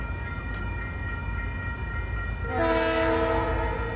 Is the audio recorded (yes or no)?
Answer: yes